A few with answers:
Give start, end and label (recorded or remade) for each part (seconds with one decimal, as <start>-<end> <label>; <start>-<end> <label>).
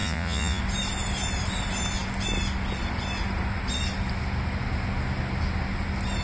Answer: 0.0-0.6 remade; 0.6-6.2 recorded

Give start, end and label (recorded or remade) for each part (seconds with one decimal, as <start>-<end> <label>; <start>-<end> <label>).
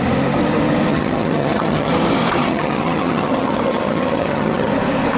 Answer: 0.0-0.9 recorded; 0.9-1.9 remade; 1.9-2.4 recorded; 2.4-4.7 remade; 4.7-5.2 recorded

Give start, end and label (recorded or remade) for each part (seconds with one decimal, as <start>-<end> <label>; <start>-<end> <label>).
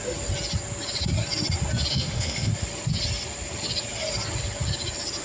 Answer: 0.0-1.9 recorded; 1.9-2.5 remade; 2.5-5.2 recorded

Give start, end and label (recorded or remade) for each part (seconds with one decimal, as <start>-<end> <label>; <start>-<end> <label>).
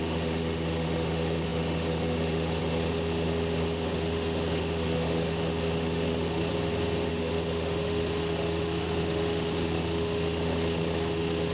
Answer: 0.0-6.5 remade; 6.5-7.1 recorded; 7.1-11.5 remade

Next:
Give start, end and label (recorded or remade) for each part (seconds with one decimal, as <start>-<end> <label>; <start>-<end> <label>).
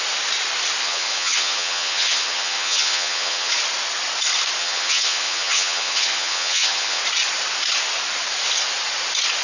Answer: 0.0-0.8 recorded; 0.8-3.5 remade; 3.5-4.6 recorded; 4.6-7.0 remade; 7.0-9.4 recorded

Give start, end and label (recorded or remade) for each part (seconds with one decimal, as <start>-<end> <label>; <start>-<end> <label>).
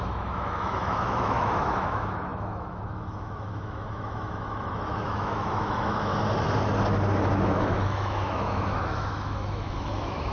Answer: 0.0-6.1 remade; 6.1-7.4 recorded; 7.4-10.3 remade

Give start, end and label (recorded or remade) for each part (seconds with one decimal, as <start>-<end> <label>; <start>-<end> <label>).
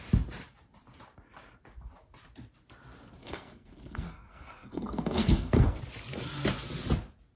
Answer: 0.0-3.2 recorded; 3.2-5.8 remade; 5.8-7.4 recorded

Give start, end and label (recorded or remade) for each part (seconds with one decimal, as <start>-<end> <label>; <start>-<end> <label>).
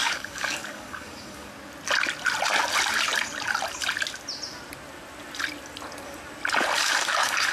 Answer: 0.0-1.5 remade; 1.5-6.8 recorded; 6.8-7.5 remade